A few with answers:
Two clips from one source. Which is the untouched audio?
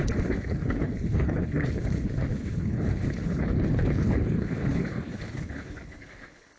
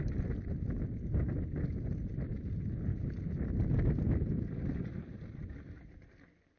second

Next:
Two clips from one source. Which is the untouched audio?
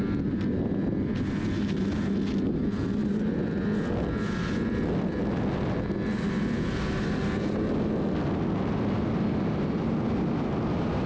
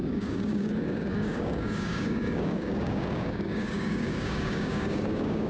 first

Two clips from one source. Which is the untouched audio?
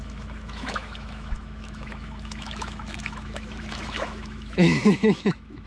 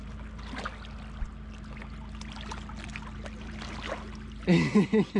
second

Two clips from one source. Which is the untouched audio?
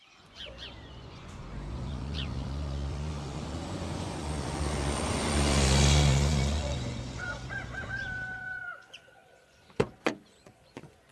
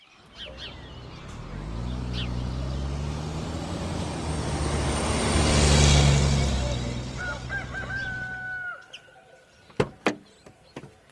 second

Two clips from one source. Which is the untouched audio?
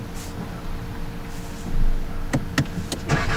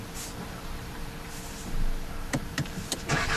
first